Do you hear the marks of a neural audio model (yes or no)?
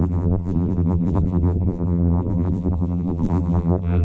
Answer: yes